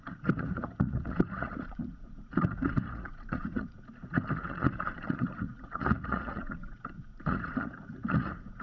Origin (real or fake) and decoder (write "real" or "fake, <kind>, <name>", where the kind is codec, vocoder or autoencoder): fake, vocoder, Vocos